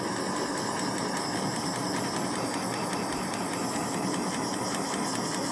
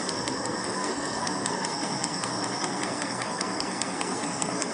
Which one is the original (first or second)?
first